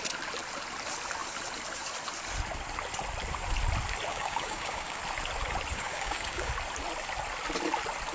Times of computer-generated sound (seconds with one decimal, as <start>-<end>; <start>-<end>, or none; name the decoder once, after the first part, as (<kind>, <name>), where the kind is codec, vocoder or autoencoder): 4.1-5.0 (codec, DAC); 5.7-6.5